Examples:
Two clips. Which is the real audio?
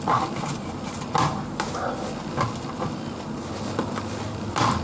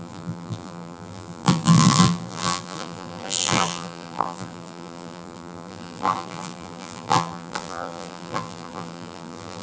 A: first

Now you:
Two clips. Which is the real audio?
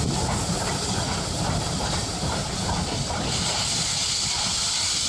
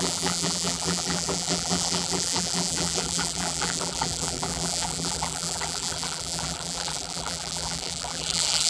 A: first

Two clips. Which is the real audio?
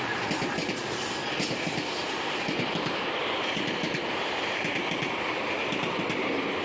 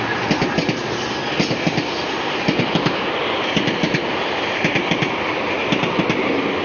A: second